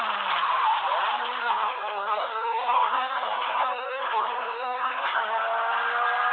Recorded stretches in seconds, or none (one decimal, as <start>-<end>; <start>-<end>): 0.0-1.4; 5.2-6.3